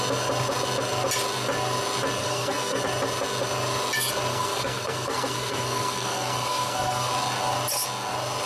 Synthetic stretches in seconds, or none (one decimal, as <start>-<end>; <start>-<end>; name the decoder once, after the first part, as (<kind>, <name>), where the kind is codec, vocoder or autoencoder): 2.2-2.8 (codec, SNAC); 4.3-7.1